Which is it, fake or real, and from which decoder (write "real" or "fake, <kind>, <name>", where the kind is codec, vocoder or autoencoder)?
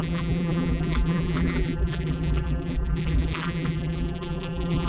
fake, vocoder, BigVGAN v2